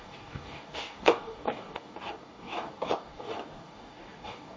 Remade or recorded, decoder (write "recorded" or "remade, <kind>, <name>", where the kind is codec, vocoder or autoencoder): remade, codec, DAC